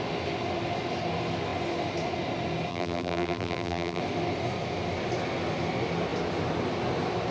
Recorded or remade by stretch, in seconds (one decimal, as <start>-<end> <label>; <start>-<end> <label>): 0.0-2.7 recorded; 2.7-4.0 remade; 4.0-7.3 recorded